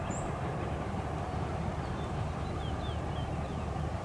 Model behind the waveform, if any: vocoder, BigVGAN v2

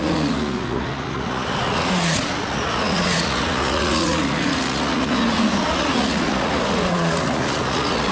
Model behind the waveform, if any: vocoder, Vocos